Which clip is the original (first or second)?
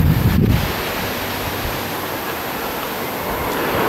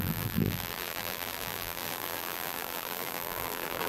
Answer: first